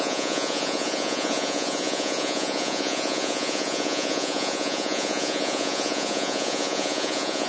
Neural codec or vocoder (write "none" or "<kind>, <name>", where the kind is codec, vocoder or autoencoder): vocoder, Vocos